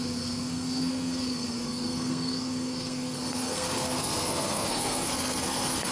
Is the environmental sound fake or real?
fake